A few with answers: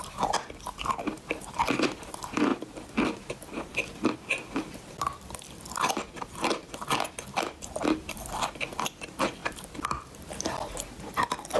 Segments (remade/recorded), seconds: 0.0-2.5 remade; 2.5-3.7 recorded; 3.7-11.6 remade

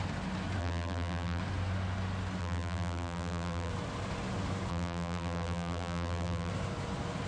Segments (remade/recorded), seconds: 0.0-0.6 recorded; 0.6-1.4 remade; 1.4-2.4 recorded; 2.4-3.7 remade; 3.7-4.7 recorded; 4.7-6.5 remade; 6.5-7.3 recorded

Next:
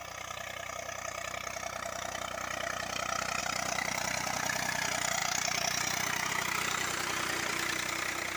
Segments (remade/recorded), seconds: 0.0-3.4 recorded; 3.4-8.4 remade

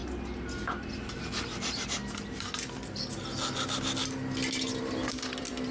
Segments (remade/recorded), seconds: 0.0-1.3 recorded; 1.3-2.0 remade; 2.0-4.8 recorded; 4.8-5.7 remade

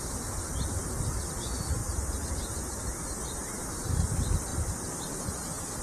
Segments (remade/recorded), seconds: 0.0-0.4 recorded; 0.4-1.3 remade; 1.3-1.8 recorded; 1.8-3.4 remade; 3.4-4.5 recorded; 4.5-5.0 remade; 5.0-5.8 recorded